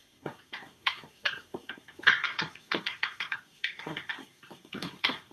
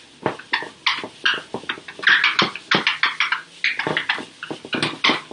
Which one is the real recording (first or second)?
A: second